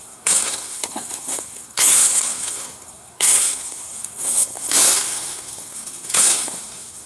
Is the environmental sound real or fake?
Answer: fake